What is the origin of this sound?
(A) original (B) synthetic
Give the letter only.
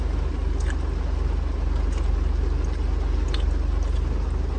A